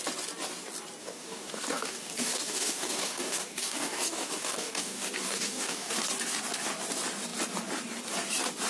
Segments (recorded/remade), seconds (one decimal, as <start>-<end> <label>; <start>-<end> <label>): 0.0-1.0 recorded; 1.0-5.9 remade; 5.9-8.7 recorded